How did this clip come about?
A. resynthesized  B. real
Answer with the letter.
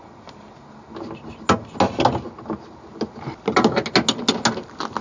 B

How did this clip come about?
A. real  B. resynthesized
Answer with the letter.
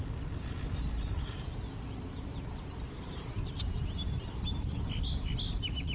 A